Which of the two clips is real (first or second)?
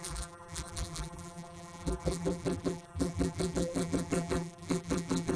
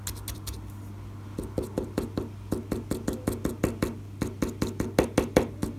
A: second